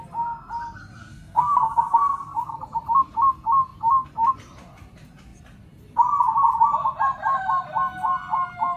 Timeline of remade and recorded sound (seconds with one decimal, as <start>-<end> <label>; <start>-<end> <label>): 0.0-1.0 recorded; 1.0-2.6 remade; 2.6-8.8 recorded

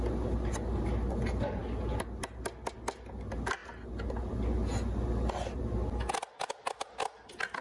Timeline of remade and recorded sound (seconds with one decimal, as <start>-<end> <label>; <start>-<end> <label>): 0.0-7.6 recorded

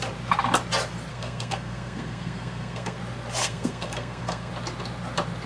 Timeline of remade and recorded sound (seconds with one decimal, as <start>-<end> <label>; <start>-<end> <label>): 0.0-1.1 recorded; 1.1-3.0 remade; 3.0-3.4 recorded; 3.4-4.5 remade; 4.5-5.5 recorded

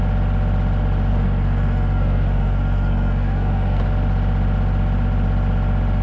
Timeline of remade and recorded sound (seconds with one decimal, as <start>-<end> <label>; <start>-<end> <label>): 0.0-1.1 recorded; 1.1-3.8 remade; 3.8-6.0 recorded

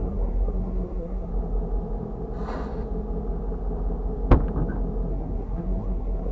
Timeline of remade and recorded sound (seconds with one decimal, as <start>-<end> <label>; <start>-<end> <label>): 0.0-1.3 remade; 1.3-5.1 recorded; 5.1-6.3 remade